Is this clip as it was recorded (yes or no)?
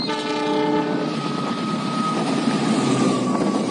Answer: yes